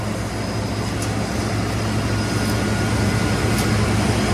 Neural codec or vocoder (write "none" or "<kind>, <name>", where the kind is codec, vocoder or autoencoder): none